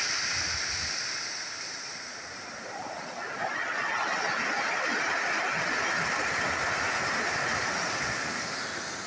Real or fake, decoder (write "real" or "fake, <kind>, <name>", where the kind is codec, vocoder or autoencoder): real